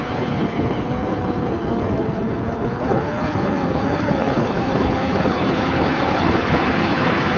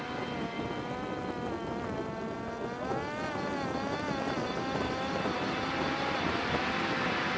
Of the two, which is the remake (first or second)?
first